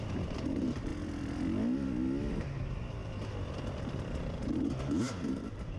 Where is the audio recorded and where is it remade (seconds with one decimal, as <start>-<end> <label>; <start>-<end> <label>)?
0.0-0.9 remade; 0.9-2.3 recorded; 2.3-3.0 remade; 3.0-5.0 recorded; 5.0-5.8 remade